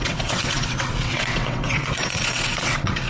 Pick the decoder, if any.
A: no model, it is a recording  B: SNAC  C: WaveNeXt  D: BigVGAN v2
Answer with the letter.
C